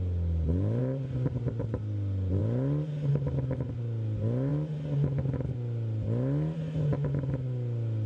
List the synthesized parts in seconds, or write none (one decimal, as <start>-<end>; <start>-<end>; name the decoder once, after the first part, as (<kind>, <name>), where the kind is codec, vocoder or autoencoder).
none